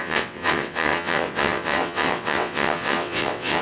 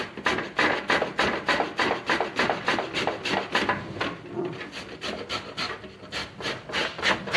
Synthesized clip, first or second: first